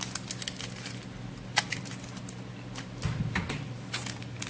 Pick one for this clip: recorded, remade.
recorded